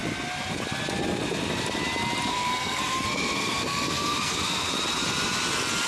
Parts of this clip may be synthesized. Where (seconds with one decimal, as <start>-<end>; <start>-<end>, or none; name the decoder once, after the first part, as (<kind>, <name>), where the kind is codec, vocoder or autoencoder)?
2.3-4.7 (codec, SNAC)